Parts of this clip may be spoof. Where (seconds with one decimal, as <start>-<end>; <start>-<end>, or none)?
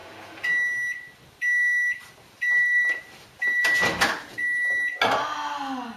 none